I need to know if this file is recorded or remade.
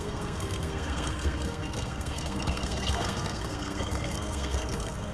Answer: remade